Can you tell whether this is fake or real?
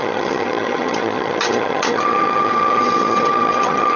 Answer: fake